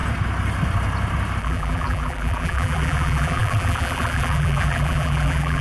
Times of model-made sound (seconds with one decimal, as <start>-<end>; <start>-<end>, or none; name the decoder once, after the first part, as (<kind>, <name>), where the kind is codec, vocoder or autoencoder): 1.4-5.6 (vocoder, BigVGAN v2)